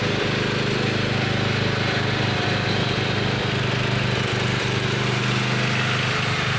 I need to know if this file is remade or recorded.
recorded